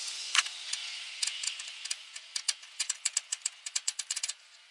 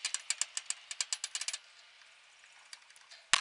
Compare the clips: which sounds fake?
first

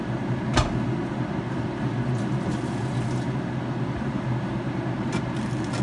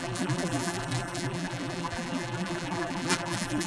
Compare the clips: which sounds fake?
second